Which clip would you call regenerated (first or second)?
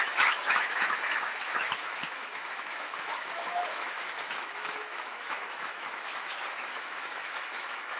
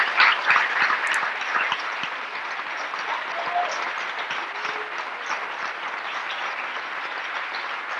first